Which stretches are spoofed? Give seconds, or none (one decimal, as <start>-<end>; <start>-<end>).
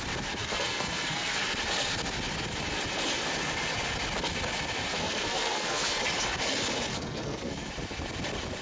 0.4-1.4; 5.0-6.0; 6.9-7.7